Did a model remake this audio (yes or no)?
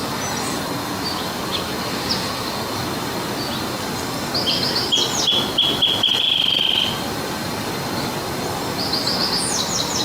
no